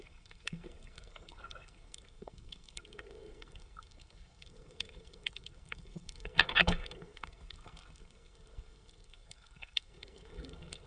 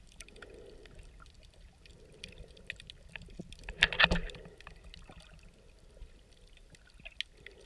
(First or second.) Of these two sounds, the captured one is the second